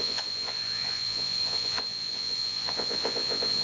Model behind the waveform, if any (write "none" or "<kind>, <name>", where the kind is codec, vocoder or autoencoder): vocoder, Vocos